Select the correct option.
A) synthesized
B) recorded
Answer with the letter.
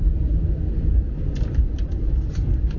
B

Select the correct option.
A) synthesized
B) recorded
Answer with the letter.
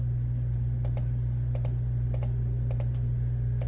B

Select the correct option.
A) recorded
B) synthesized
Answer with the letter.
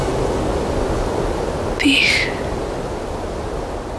A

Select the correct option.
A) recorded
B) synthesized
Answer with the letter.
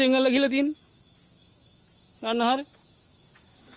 B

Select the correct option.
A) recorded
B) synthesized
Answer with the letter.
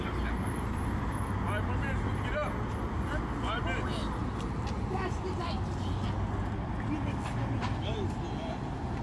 A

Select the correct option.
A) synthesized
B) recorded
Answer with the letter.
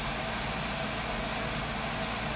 B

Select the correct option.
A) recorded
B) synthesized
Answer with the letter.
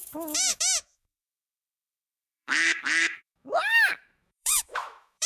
B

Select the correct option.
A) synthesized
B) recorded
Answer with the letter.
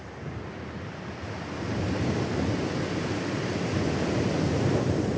B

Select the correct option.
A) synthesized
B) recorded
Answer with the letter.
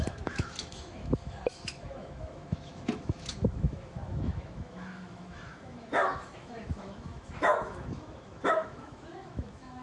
A